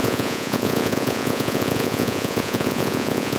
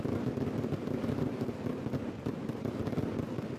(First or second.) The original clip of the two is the second